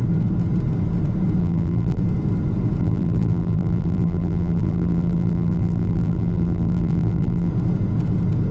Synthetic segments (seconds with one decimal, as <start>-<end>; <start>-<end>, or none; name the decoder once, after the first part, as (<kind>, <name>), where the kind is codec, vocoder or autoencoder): 1.4-2.0 (vocoder, BigVGAN v2); 2.8-7.5